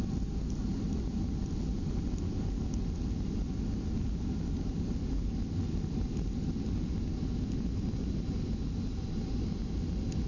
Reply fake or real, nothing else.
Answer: real